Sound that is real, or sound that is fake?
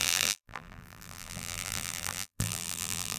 fake